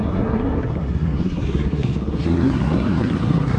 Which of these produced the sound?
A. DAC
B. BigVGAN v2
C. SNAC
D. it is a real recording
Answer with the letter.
C